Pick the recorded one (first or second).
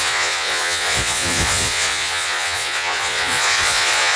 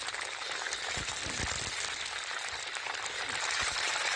second